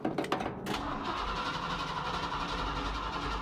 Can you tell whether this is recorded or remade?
recorded